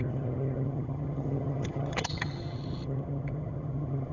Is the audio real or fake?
fake